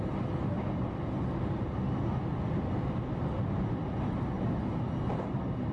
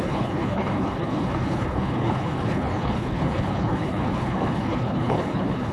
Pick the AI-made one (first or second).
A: second